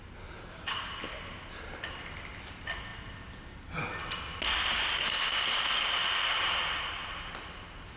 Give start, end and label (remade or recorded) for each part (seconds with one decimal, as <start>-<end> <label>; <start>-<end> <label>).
0.0-8.0 recorded